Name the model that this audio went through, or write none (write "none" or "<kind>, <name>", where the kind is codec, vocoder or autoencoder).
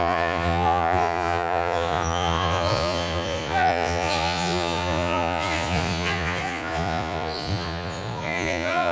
vocoder, Vocos